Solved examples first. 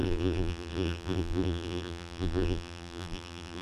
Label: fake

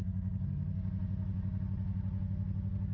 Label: real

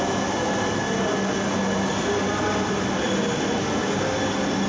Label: real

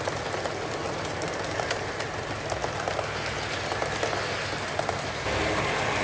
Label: real